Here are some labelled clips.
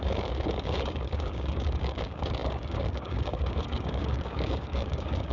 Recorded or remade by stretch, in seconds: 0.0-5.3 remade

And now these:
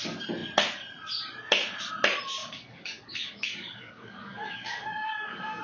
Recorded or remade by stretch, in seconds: 0.0-2.4 recorded; 2.4-5.6 remade

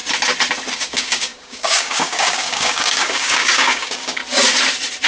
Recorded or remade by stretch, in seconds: 0.0-0.7 recorded; 0.7-4.2 remade; 4.2-5.1 recorded

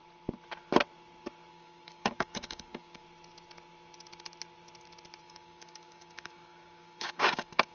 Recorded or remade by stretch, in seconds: 0.0-1.5 recorded; 1.5-3.0 remade; 3.0-5.2 recorded; 5.2-7.7 remade

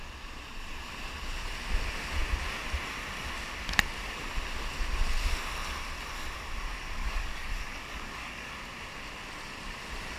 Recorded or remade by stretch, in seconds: 0.0-7.0 recorded; 7.0-8.5 remade; 8.5-10.2 recorded

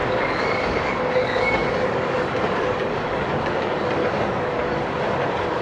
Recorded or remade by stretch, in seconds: 0.0-5.6 remade

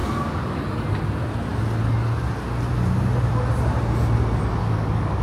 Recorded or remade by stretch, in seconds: 0.0-0.6 remade; 0.6-4.6 recorded; 4.6-5.2 remade

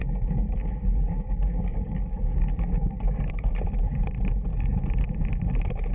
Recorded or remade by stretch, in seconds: 0.0-3.5 remade; 3.5-4.5 recorded; 4.5-5.0 remade; 5.0-5.9 recorded